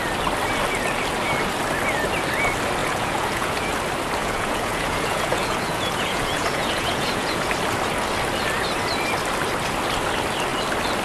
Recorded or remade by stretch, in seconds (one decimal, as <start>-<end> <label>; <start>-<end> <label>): 0.0-2.8 recorded; 2.8-3.8 remade; 3.8-4.2 recorded; 4.2-7.5 remade; 7.5-11.0 recorded